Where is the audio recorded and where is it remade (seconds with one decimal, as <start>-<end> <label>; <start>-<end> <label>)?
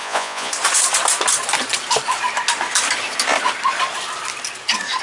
0.0-0.5 remade; 0.5-5.0 recorded